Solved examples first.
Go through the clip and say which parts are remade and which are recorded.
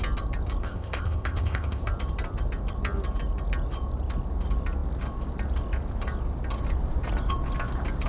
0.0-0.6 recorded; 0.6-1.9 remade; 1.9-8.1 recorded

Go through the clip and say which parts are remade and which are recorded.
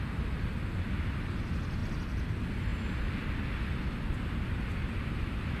0.0-5.6 recorded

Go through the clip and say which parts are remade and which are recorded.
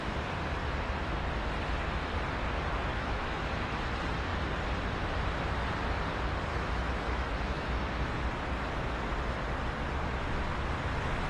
0.0-2.9 recorded; 2.9-3.8 remade; 3.8-6.5 recorded; 6.5-8.2 remade; 8.2-11.3 recorded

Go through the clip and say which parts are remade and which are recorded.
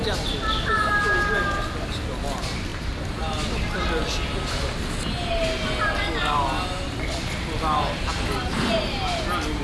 0.0-9.6 recorded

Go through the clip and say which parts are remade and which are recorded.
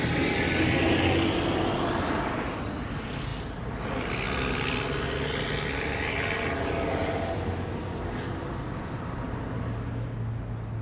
0.0-10.8 recorded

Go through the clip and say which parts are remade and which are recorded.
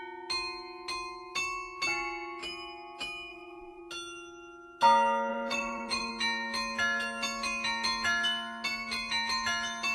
0.0-3.3 recorded; 3.3-3.8 remade; 3.8-5.3 recorded; 5.3-6.1 remade; 6.1-9.9 recorded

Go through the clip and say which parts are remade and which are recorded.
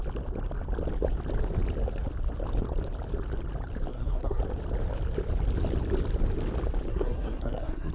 0.0-3.9 recorded; 3.9-4.4 remade; 4.4-6.9 recorded; 6.9-7.9 remade